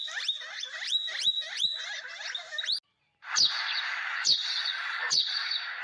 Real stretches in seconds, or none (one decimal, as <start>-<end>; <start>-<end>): 0.0-4.4